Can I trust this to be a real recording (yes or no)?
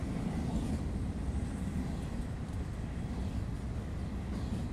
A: yes